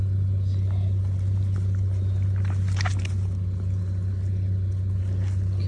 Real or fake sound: real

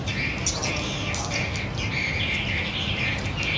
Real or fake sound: real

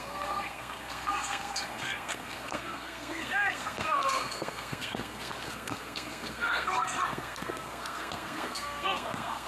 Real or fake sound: fake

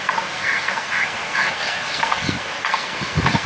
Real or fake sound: fake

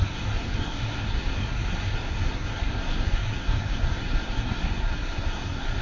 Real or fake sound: fake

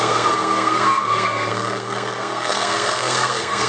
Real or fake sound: fake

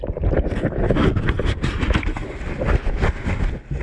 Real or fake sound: real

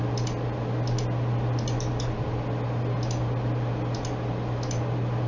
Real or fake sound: real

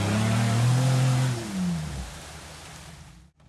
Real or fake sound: real